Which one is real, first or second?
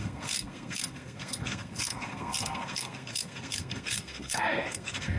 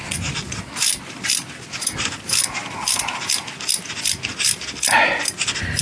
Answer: second